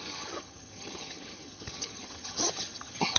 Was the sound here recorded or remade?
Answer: remade